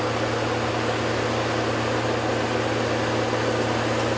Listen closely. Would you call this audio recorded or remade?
recorded